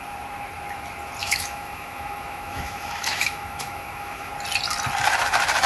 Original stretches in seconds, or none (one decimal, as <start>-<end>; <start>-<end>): 0.0-1.2; 4.3-5.7